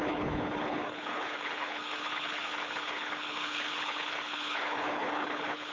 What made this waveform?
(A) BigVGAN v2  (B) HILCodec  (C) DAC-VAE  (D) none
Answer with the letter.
B